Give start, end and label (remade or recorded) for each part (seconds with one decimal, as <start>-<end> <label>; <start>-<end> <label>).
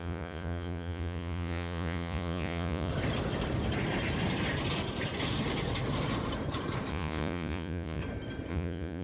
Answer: 0.0-2.9 remade; 2.9-6.9 recorded; 6.9-8.0 remade; 8.0-8.5 recorded; 8.5-9.0 remade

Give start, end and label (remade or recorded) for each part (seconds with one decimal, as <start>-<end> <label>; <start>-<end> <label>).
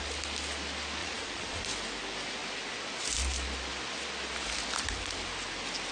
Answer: 0.0-1.0 recorded; 1.0-1.6 remade; 1.6-5.9 recorded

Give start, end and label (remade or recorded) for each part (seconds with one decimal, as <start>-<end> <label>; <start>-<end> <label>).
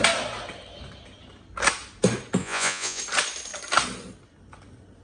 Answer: 0.0-2.4 recorded; 2.4-3.0 remade; 3.0-5.0 recorded